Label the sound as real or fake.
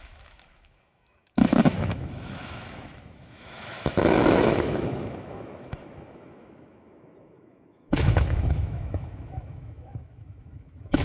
fake